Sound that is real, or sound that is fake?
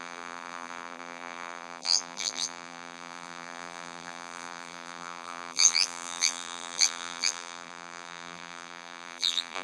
fake